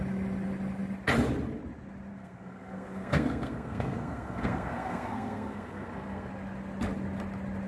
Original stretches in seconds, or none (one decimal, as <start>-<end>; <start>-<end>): 0.0-2.1; 6.3-7.7